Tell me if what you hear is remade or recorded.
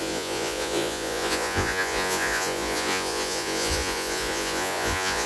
remade